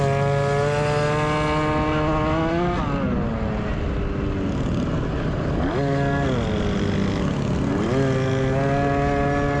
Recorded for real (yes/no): yes